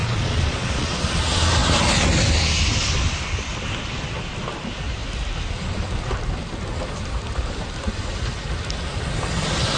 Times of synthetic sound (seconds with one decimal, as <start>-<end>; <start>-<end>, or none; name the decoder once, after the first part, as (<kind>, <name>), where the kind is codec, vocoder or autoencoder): 0.0-1.0 (vocoder, Vocos)